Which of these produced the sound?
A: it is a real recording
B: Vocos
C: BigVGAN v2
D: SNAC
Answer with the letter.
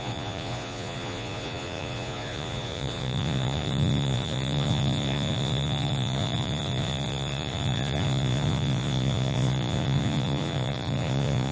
B